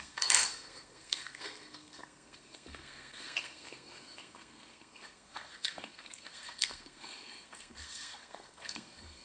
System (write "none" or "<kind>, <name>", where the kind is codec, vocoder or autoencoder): codec, SNAC